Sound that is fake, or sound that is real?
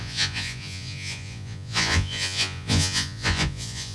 fake